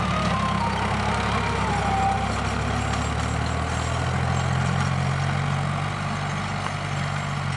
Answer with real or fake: real